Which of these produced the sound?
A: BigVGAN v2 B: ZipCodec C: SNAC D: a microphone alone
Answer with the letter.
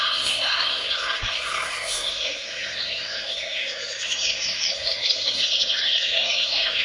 C